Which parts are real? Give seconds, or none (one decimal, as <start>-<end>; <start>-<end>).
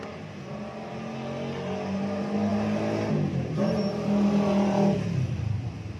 0.0-6.0